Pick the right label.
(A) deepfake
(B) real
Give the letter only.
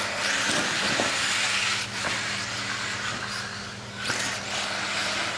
B